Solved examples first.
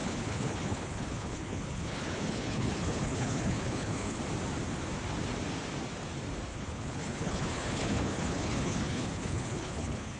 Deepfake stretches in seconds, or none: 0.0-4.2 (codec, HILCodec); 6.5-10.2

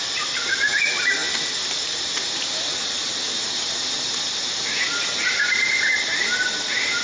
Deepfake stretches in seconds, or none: none

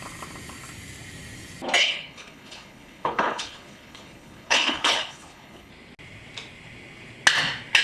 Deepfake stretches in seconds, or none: 1.8-5.7 (codec, HILCodec)